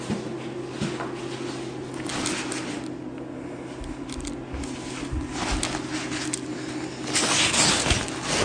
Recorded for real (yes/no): yes